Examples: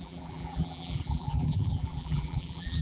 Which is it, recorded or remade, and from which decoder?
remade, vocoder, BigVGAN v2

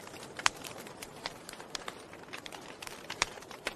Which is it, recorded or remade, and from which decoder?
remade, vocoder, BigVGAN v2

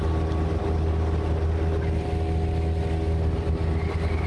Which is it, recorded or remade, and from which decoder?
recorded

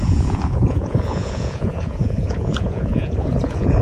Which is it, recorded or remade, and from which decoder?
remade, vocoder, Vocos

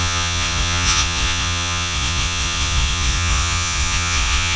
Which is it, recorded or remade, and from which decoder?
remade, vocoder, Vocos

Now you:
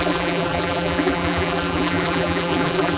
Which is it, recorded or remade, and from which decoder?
remade, vocoder, BigVGAN v2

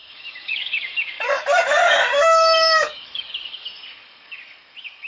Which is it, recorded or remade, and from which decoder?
remade, codec, DAC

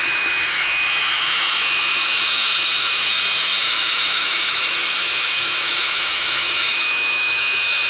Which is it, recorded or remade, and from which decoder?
remade, autoencoder, DAC-VAE